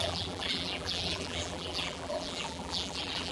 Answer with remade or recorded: remade